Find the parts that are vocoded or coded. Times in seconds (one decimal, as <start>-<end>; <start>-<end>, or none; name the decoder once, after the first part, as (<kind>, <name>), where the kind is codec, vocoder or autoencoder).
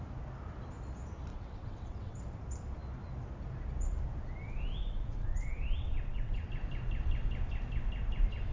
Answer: 1.3-2.2 (vocoder, WaveNeXt); 4.8-6.5